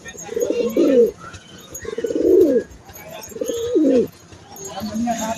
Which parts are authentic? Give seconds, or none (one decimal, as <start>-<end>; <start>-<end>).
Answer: 0.0-1.0; 4.2-5.4